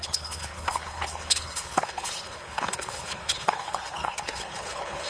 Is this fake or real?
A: fake